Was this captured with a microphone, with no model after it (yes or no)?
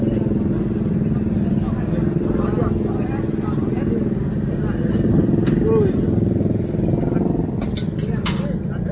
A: yes